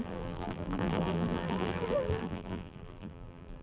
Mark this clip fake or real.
fake